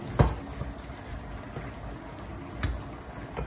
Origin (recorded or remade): recorded